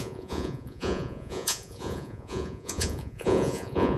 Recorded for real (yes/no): no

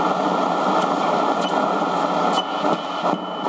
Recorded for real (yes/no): yes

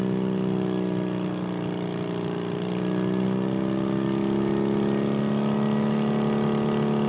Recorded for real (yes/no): yes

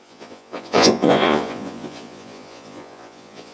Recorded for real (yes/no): no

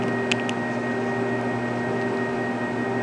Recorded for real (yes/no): yes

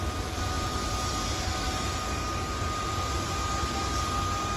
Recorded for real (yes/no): yes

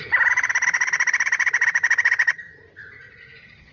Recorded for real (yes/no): yes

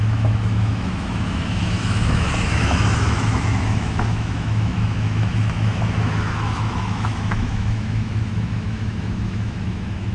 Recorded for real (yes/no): no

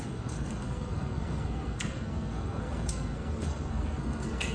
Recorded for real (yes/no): no